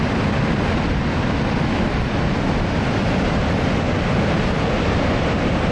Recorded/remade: recorded